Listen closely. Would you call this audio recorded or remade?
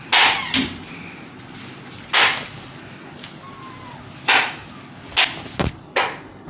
recorded